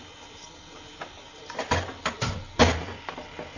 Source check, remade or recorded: recorded